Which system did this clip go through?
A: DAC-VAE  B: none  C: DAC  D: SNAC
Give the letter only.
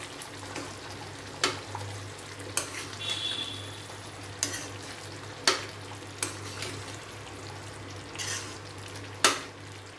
B